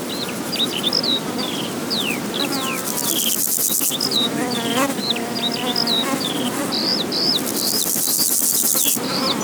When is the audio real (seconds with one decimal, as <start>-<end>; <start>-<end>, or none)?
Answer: 0.0-9.4